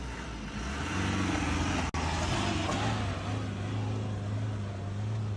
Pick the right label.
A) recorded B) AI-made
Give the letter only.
A